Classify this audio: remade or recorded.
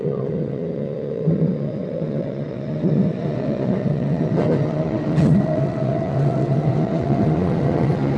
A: remade